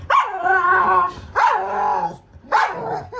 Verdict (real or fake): real